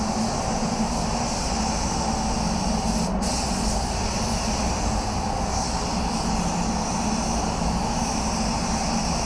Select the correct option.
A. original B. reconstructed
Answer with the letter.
A